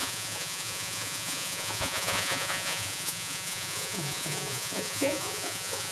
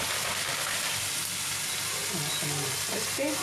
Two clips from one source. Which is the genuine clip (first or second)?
second